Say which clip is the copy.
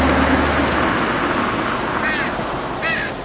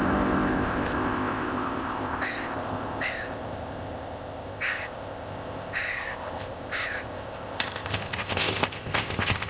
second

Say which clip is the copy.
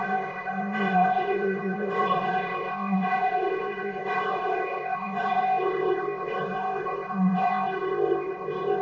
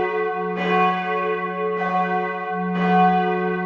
first